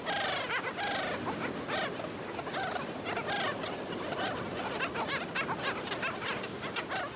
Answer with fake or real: real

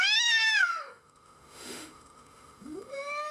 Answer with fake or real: fake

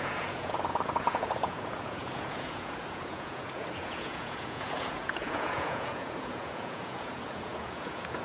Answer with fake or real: fake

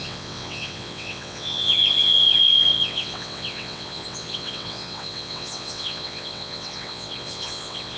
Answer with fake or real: fake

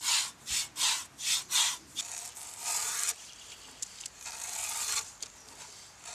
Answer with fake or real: real